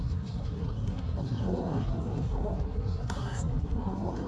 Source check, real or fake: fake